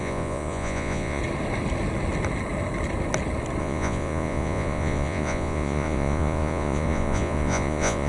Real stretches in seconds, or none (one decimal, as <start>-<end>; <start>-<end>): 1.2-3.6